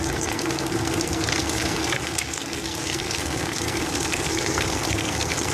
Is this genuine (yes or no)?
no